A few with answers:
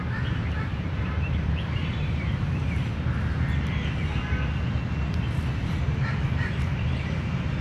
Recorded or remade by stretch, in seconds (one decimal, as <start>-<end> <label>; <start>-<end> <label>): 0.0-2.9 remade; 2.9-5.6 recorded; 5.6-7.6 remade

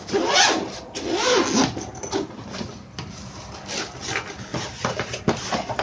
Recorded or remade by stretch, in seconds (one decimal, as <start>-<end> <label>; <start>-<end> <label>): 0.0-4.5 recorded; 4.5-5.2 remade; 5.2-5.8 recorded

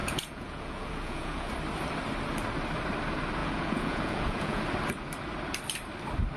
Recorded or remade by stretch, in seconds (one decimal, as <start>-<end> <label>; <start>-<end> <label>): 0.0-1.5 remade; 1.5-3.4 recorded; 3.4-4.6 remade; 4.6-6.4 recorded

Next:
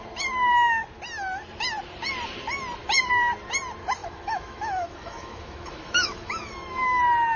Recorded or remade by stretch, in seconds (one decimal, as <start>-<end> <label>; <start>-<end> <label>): 0.0-4.0 recorded; 4.0-7.0 remade; 7.0-7.4 recorded

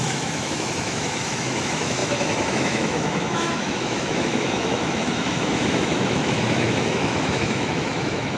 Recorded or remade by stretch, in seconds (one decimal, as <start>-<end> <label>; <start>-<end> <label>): 0.0-8.4 remade